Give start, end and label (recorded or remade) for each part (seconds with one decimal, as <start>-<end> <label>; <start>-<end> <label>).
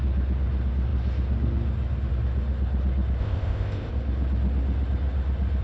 0.0-3.2 recorded; 3.2-3.9 remade; 3.9-5.6 recorded